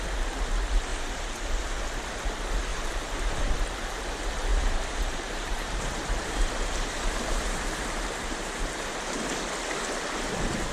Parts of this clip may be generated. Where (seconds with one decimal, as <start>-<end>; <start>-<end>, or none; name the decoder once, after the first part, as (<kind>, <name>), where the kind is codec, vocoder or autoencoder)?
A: 0.9-1.6 (vocoder, BigVGAN v2); 2.7-3.4; 4.5-9.2